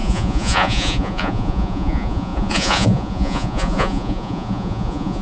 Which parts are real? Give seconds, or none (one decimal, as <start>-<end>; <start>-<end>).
none